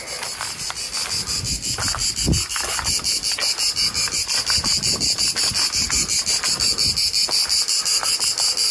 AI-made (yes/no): no